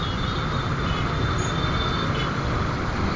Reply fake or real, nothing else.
real